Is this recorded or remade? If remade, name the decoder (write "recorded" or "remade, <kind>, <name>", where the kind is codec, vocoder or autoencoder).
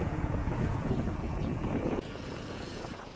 remade, vocoder, Vocos